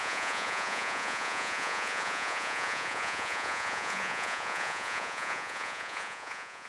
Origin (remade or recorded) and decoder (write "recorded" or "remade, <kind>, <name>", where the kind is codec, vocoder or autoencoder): remade, vocoder, Vocos